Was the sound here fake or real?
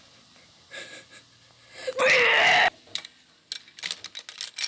real